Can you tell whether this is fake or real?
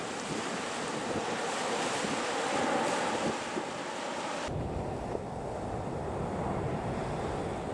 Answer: real